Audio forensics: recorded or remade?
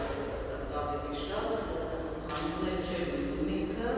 recorded